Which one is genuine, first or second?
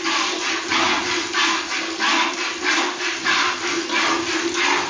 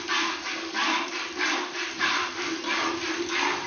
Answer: first